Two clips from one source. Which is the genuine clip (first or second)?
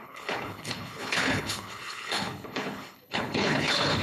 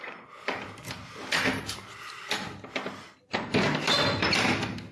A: second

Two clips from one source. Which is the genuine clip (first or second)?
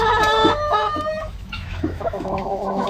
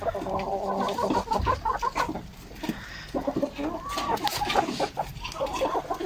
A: second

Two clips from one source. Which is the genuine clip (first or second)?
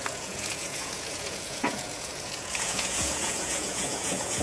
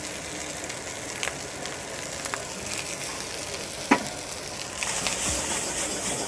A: second